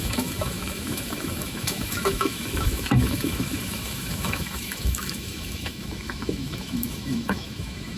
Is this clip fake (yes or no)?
yes